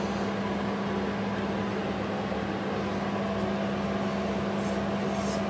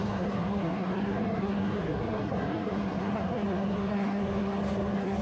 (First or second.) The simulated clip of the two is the second